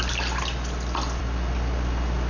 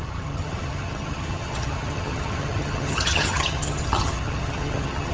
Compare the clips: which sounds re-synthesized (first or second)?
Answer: second